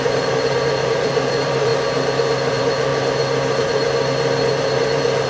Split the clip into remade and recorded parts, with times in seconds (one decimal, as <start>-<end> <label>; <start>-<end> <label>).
0.0-1.7 remade; 1.7-2.5 recorded; 2.5-2.9 remade; 2.9-4.7 recorded; 4.7-5.3 remade